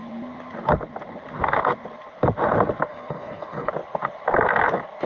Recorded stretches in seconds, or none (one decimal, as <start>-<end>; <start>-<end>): 0.0-2.9; 3.7-5.1